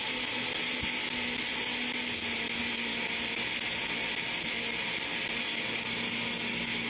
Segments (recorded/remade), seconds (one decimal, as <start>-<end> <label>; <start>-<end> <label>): 0.0-6.9 recorded